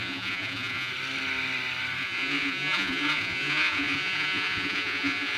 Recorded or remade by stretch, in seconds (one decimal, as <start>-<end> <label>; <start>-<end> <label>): 0.0-0.9 remade; 0.9-2.0 recorded; 2.0-5.4 remade